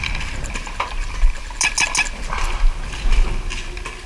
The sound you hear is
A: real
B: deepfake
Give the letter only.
A